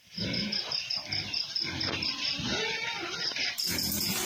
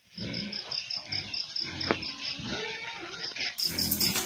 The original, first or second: second